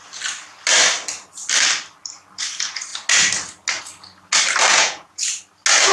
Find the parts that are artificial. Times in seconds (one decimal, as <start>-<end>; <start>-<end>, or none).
4.7-5.4